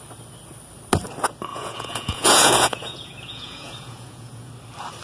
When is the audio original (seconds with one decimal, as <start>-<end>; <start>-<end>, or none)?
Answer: 0.0-1.5; 4.5-5.0

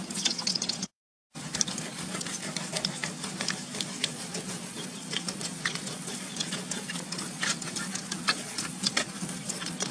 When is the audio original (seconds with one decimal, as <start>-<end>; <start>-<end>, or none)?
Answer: 1.0-1.7; 2.4-4.0

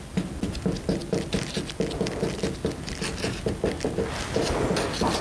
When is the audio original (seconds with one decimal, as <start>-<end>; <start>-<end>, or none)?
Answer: 0.0-5.2

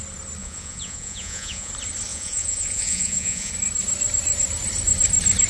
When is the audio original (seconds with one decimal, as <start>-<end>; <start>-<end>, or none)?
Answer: 0.0-0.4; 1.7-2.1; 3.5-5.5

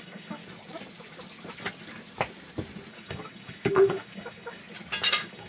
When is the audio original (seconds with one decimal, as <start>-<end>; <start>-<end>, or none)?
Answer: 0.4-2.9; 4.6-5.1

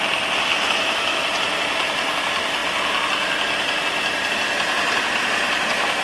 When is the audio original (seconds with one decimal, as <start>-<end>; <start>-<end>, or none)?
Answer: 0.0-0.5; 1.2-6.0

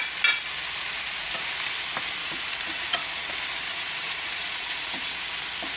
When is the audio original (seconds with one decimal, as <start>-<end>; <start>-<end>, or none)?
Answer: 0.0-2.2; 3.3-3.7; 5.2-5.8

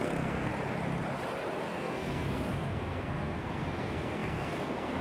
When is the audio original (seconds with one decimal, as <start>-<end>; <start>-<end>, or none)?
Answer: 0.5-1.6